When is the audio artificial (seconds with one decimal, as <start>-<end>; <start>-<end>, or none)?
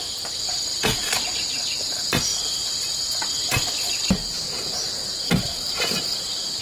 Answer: none